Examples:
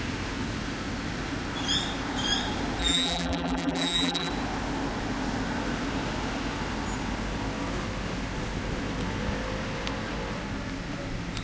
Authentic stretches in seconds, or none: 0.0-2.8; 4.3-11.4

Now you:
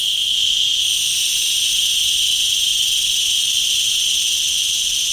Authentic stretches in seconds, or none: 0.0-1.7; 4.2-5.1

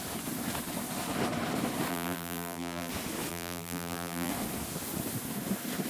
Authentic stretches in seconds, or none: 0.0-1.9; 2.9-3.3; 4.3-5.9

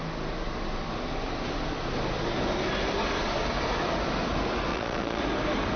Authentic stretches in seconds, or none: 0.0-4.7; 5.2-5.8

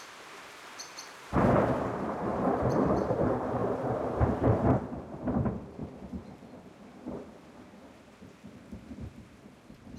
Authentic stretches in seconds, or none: 5.8-9.4